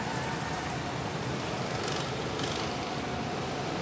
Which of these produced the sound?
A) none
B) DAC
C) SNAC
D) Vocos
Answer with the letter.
A